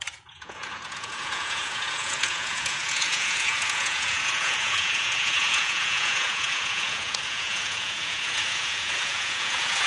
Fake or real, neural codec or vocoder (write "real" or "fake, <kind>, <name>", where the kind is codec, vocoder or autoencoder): fake, vocoder, Vocos